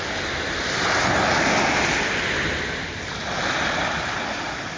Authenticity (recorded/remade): recorded